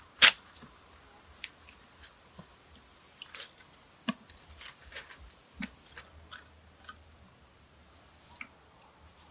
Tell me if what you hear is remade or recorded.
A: recorded